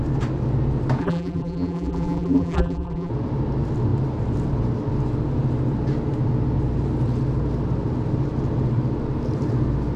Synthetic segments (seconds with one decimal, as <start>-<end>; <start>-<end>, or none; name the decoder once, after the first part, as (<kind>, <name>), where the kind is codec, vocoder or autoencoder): 1.0-3.1 (vocoder, BigVGAN v2)